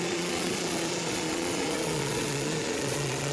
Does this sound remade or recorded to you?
remade